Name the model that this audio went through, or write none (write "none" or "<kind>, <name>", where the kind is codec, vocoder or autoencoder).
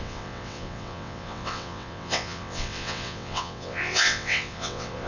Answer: vocoder, WaveNeXt